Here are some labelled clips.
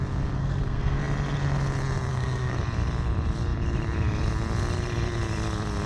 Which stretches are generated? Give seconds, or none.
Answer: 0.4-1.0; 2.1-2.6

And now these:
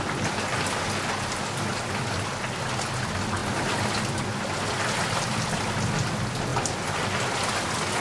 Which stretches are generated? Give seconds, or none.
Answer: none

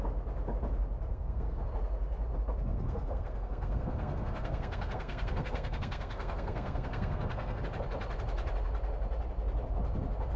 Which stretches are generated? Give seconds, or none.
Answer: 1.1-1.6; 2.7-7.6

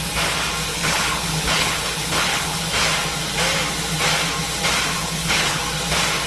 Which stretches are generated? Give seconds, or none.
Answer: 0.7-2.6; 5.0-5.6